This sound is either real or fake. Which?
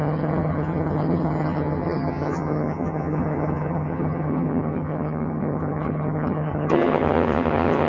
fake